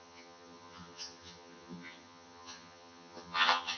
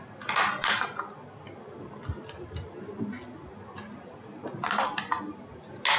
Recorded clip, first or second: second